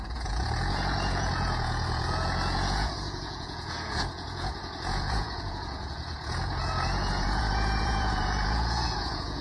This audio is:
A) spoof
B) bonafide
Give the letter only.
A